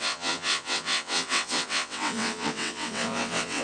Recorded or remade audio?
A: remade